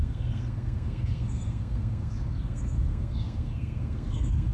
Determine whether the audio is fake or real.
fake